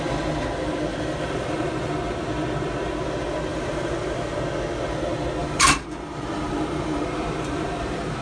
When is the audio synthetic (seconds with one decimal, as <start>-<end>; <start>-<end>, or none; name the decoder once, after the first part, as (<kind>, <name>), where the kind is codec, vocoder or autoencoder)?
0.9-1.9 (vocoder, BigVGAN v2); 3.5-4.4; 5.4-8.2